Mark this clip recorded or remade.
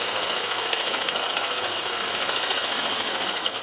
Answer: remade